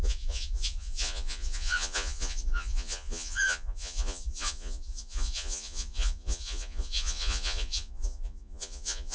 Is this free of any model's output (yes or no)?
no